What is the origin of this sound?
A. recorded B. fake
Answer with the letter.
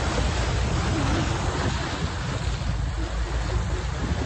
A